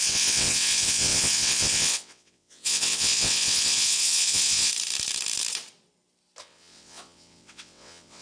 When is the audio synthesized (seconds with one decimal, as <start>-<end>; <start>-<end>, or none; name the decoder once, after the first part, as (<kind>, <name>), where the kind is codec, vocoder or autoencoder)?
0.0-4.7 (vocoder, WaveNeXt); 6.4-8.2